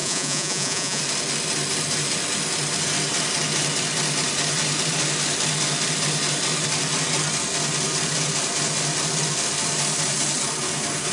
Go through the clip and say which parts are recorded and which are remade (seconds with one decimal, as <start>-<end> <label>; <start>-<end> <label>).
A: 0.0-1.0 remade; 1.0-11.1 recorded